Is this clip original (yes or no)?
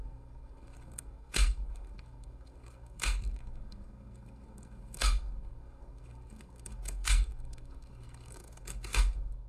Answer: no